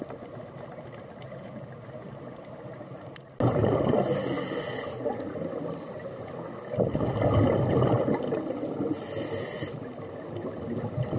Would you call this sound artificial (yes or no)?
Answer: no